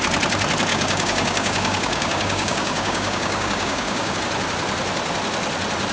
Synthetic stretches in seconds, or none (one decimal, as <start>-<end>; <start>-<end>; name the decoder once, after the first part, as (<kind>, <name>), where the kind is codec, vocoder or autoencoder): 0.7-4.2 (codec, DAC)